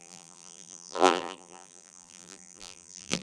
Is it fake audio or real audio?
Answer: fake